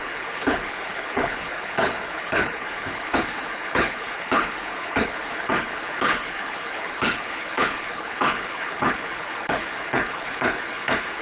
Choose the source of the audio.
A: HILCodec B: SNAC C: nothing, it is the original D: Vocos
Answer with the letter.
A